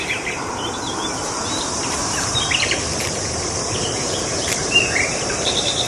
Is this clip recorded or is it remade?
remade